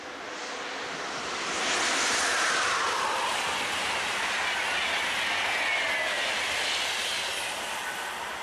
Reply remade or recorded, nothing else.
recorded